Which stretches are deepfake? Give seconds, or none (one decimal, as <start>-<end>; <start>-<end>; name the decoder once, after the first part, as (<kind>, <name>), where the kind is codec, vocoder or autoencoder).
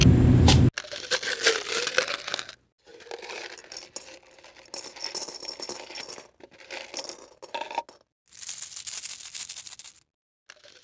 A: 2.9-3.7 (vocoder, BigVGAN v2)